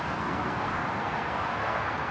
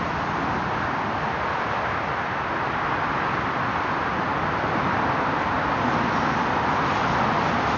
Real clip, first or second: second